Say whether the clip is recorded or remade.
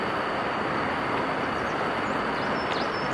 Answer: recorded